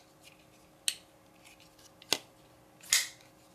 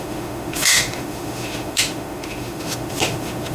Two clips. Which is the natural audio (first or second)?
first